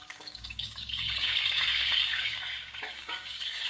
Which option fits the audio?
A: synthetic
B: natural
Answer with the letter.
A